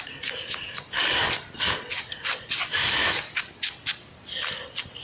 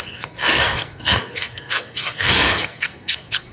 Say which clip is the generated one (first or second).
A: second